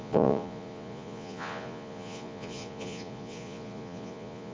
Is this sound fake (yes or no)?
yes